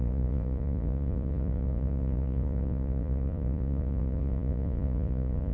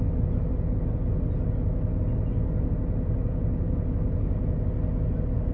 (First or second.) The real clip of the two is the second